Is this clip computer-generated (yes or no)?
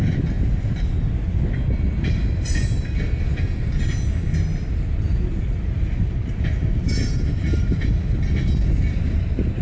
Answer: no